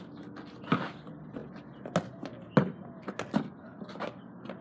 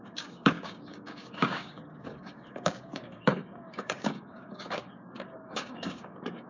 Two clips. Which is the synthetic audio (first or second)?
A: second